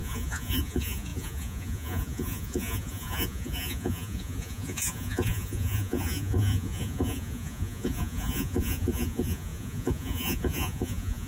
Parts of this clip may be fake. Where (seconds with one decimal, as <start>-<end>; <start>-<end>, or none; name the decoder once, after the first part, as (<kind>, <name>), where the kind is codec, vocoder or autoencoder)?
0.0-11.3 (vocoder, Vocos)